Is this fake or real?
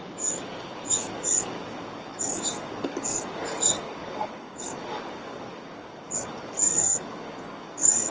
fake